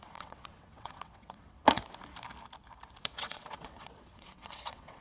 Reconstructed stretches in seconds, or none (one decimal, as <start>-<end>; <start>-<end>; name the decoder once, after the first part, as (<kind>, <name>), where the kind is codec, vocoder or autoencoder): 0.0-1.8 (vocoder, WaveNeXt); 3.0-5.0